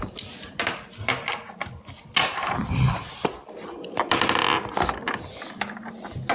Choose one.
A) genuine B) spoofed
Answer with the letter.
A